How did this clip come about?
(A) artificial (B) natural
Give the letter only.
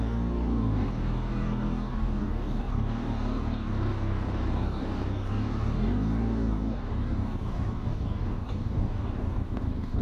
A